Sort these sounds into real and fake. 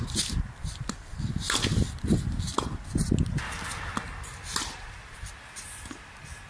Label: real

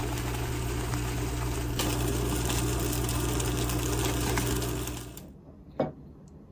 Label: real